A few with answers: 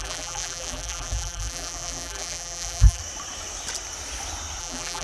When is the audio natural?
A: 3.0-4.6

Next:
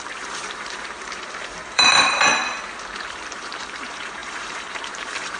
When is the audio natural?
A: 2.5-3.0

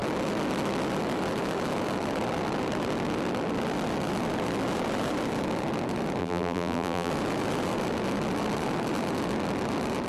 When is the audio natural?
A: 0.0-6.2; 7.1-10.1

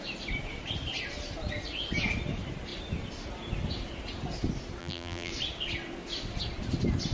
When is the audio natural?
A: 0.0-4.8; 5.3-7.1

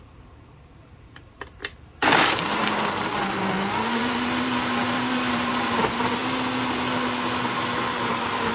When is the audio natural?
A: 6.2-7.9